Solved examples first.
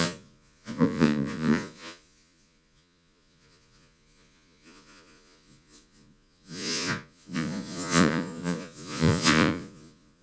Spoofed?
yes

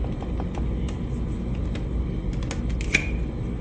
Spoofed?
no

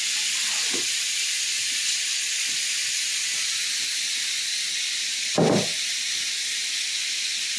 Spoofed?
no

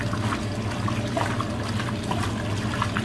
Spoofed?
no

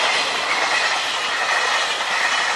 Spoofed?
no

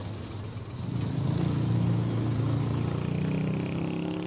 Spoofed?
no